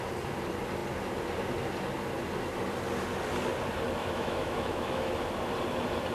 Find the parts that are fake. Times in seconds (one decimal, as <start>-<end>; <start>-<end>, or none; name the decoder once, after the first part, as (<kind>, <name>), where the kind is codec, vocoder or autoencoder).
4.0-5.1 (autoencoder, DAC-VAE)